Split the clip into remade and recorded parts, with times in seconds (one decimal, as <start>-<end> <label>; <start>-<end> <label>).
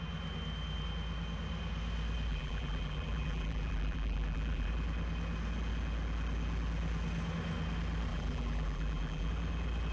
0.0-2.3 recorded; 2.3-4.7 remade; 4.7-8.1 recorded; 8.1-9.3 remade; 9.3-9.9 recorded